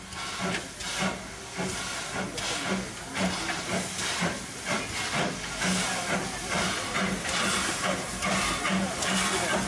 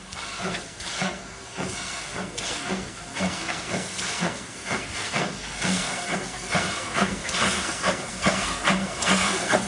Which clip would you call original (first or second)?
first